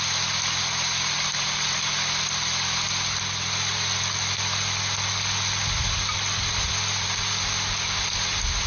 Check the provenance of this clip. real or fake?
real